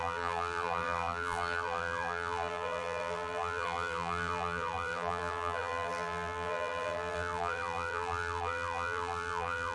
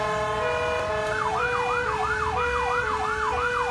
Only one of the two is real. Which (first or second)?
second